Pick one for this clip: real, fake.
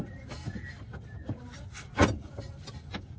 fake